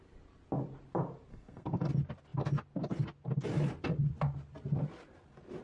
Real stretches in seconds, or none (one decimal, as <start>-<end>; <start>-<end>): 0.0-1.3; 1.9-5.6